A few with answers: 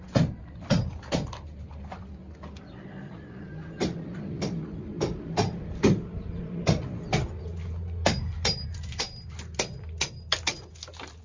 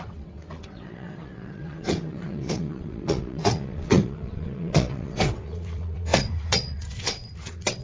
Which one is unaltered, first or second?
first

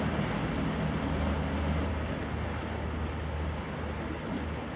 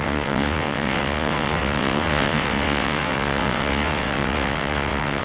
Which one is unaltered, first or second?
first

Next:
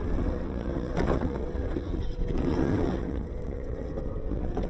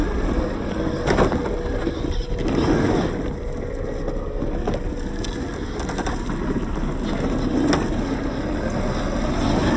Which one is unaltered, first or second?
second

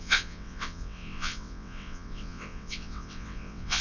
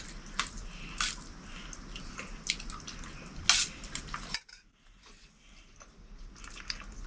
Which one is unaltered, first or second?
second